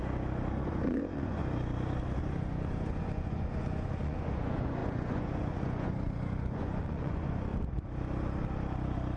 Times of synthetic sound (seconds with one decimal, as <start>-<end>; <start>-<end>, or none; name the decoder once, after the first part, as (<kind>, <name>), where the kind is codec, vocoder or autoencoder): 0.6-1.4 (vocoder, Vocos); 2.2-7.5